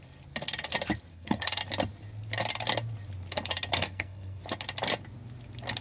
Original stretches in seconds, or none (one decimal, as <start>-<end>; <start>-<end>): 0.0-1.1; 1.6-3.7; 4.4-5.8